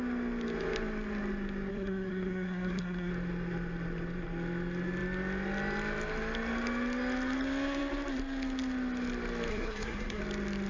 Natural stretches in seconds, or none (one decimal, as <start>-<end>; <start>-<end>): 0.0-1.7; 3.1-9.5; 10.2-10.7